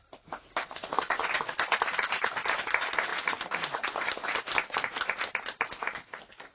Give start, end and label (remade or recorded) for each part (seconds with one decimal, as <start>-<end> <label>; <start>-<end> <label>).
0.0-0.6 recorded; 0.6-1.2 remade; 1.2-6.5 recorded